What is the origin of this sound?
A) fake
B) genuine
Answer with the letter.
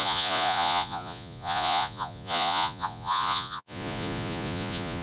A